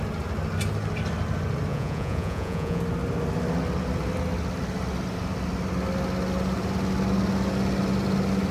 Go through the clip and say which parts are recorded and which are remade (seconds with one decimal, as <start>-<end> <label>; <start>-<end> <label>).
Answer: 0.0-1.7 recorded; 1.7-2.8 remade; 2.8-8.5 recorded